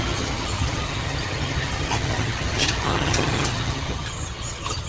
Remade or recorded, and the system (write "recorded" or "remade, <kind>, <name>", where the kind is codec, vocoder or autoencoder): remade, vocoder, HiFi-GAN